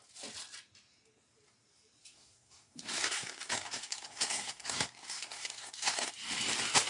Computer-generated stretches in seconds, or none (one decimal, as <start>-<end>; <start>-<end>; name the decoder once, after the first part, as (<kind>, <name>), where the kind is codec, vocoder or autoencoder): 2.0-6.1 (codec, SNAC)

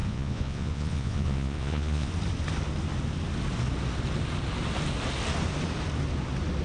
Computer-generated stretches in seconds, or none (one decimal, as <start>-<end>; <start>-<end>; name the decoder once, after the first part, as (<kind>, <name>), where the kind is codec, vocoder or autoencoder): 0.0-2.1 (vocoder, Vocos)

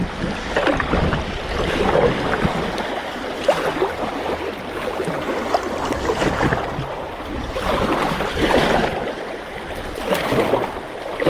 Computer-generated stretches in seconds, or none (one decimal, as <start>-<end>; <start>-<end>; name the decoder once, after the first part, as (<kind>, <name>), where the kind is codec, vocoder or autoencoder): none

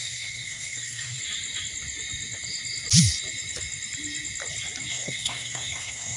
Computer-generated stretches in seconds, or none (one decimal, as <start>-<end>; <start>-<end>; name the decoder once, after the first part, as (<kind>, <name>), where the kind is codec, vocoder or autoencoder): 0.0-1.2 (codec, SNAC); 4.9-6.2

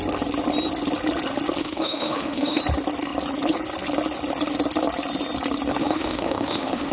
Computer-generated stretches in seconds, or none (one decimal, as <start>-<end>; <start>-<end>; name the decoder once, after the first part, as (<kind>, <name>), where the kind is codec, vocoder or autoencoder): 1.6-2.6 (autoencoder, DAC-VAE); 5.8-6.9

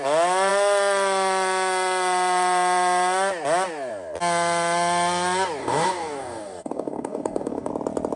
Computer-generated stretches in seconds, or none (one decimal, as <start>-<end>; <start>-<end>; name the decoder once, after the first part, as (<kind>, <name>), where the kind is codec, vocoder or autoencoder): 5.6-7.7 (codec, DAC)